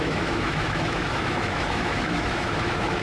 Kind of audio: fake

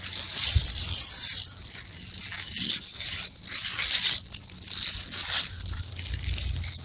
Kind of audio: real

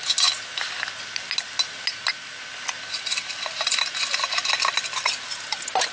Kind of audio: real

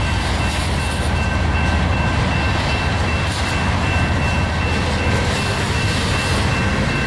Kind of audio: real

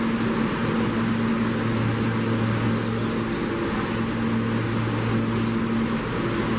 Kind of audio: real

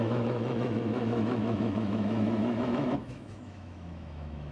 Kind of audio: fake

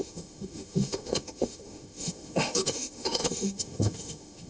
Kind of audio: fake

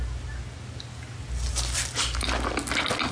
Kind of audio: real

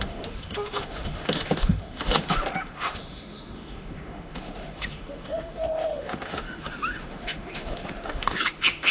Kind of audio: fake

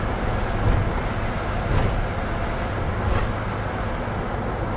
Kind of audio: real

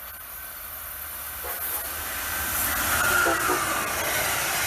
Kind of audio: real